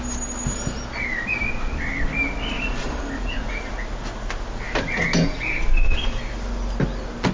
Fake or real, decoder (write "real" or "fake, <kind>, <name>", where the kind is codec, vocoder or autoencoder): real